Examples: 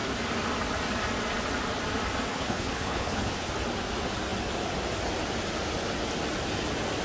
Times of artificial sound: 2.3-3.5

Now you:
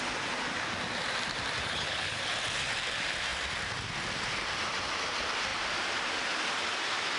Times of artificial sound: 1.6-2.2

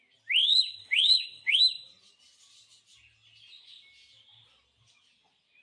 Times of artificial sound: 0.4-1.6

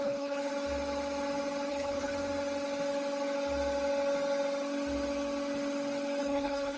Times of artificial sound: 0.0-0.5; 1.7-2.1; 6.2-6.8